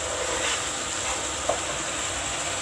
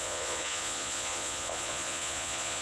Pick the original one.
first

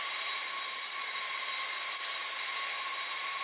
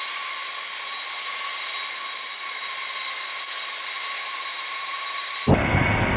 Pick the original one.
second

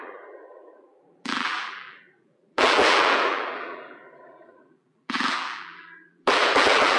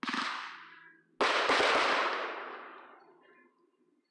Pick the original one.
second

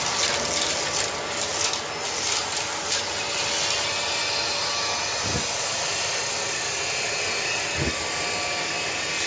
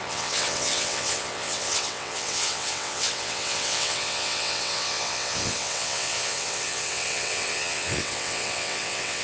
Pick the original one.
first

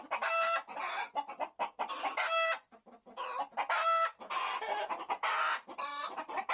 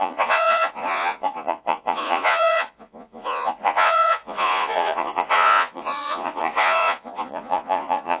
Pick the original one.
first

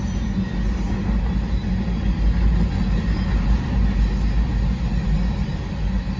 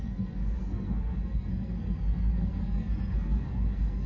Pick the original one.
first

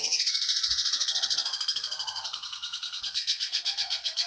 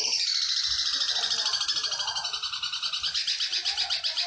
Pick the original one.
second